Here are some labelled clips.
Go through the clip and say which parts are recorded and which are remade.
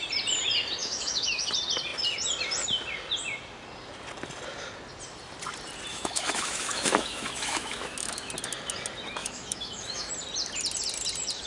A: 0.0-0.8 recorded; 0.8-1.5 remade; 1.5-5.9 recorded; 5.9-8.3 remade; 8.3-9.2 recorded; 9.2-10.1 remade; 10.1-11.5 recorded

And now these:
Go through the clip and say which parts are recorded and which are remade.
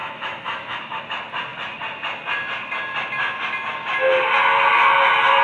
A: 0.0-1.0 remade; 1.0-5.4 recorded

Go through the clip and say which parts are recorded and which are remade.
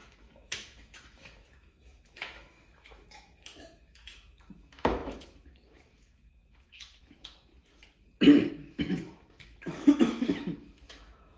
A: 0.0-7.5 remade; 7.5-8.5 recorded; 8.5-11.4 remade